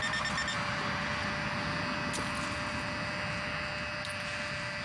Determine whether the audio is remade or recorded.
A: recorded